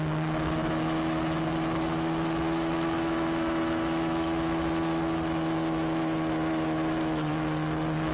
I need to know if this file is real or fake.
fake